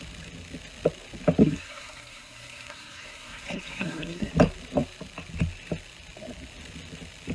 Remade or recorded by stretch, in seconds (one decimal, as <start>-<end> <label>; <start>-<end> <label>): 0.0-1.4 recorded; 1.4-4.3 remade; 4.3-7.3 recorded